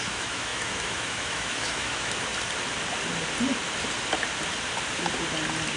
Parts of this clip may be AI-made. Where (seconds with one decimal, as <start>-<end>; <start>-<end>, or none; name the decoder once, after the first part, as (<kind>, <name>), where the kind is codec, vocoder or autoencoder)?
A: 0.0-2.3 (autoencoder, DAC-VAE)